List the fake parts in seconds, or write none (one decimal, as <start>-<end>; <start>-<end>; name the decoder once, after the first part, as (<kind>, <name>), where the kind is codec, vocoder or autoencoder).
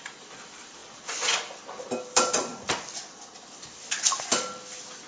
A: 0.0-0.8 (vocoder, BigVGAN v2); 2.0-2.5